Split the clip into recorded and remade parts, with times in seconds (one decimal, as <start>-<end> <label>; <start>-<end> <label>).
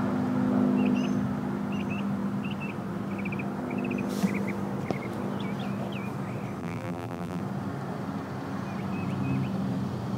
0.0-6.6 recorded; 6.6-7.4 remade; 7.4-10.2 recorded